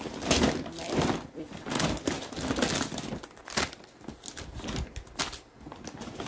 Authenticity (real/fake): real